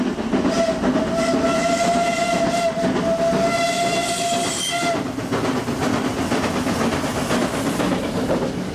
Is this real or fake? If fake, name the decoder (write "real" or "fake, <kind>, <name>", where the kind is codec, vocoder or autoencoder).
real